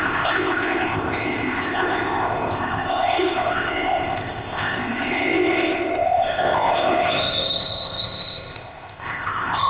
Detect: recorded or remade remade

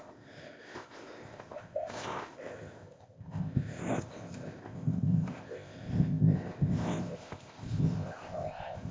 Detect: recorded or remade remade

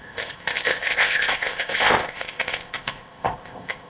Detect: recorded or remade remade